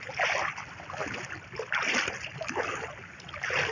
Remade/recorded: remade